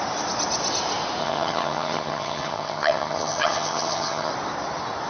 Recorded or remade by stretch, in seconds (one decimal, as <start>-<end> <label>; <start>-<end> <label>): 0.0-1.2 recorded; 1.2-4.3 remade; 4.3-5.1 recorded